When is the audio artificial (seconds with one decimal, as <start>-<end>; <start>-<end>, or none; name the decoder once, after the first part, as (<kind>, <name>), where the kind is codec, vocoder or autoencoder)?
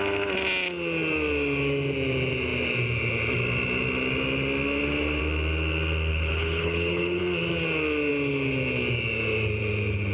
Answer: 6.1-7.2 (codec, HILCodec)